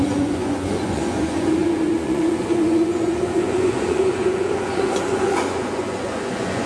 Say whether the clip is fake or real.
fake